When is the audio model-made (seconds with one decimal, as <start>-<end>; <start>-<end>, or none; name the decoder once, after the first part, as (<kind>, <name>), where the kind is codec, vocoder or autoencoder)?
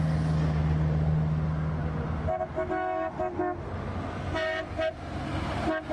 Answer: none